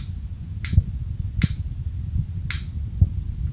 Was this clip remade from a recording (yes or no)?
no